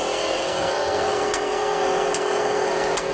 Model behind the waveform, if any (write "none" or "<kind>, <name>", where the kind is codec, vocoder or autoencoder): codec, SNAC